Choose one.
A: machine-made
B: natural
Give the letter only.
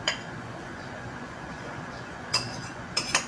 A